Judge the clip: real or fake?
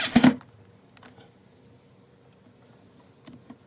real